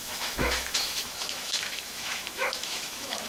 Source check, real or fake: fake